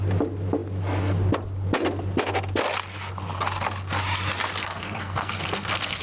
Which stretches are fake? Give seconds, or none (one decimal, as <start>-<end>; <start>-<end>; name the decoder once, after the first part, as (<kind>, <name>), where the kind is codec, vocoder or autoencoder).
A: 4.6-6.0 (codec, SNAC)